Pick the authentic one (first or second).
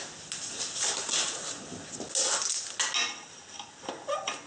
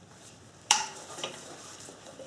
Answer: first